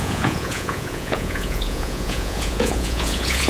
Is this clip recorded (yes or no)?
no